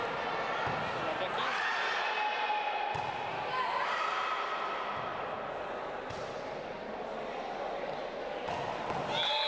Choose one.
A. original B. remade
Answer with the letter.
A